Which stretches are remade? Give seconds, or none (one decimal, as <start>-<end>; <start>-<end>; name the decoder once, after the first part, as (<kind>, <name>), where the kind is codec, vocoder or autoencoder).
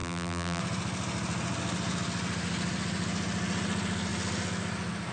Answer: 0.0-0.6 (vocoder, BigVGAN v2)